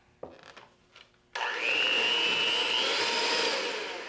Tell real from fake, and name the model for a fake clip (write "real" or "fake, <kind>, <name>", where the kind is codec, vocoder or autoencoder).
real